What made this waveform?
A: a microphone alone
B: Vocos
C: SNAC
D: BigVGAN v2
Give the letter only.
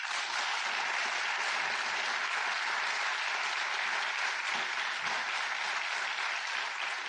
A